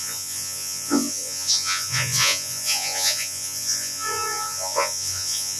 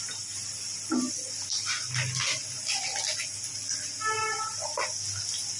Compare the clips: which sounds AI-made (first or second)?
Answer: first